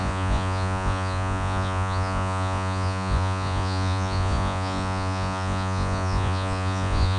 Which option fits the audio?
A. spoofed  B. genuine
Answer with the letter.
A